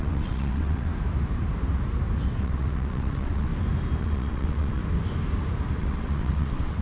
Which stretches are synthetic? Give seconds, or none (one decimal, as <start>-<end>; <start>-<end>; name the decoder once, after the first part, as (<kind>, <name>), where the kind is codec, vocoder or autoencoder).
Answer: 0.0-0.9 (vocoder, WaveNeXt); 2.4-3.5; 4.0-4.8; 5.8-6.8

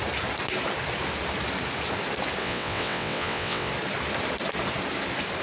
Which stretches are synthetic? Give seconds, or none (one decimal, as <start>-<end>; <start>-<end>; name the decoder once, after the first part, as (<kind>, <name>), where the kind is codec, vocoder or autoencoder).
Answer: 2.4-3.7 (vocoder, WaveNeXt)

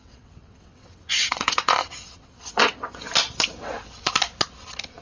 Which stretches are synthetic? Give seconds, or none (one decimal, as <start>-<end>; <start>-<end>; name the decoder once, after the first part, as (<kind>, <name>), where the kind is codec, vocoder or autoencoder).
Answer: 0.0-3.0 (vocoder, WaveNeXt)

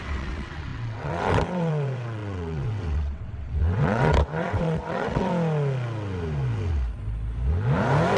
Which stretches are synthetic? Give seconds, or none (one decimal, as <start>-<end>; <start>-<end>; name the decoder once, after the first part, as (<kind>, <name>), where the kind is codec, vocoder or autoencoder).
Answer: 0.0-5.3 (vocoder, WaveNeXt)

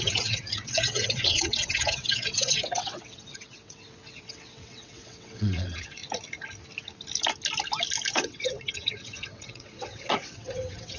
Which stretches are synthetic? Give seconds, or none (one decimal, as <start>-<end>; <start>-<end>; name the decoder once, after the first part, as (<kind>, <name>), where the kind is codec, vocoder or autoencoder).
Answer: 0.0-6.0 (vocoder, WaveNeXt); 8.1-11.0

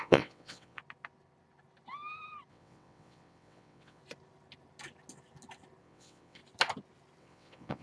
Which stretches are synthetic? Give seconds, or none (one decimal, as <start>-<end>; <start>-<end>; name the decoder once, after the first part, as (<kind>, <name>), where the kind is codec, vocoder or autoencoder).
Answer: 0.0-0.8 (vocoder, WaveNeXt); 2.5-4.0; 5.8-6.4; 7.2-7.8

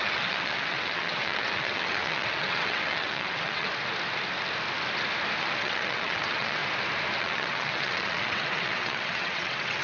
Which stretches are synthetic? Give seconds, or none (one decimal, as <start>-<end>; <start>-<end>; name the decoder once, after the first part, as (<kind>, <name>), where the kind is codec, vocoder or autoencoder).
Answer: 0.0-3.7 (vocoder, WaveNeXt); 5.4-6.6; 7.2-9.8

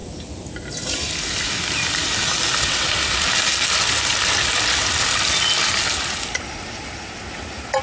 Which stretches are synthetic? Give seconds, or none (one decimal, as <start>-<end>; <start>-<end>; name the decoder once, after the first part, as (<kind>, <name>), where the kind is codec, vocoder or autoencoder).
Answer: 2.6-3.0 (vocoder, WaveNeXt)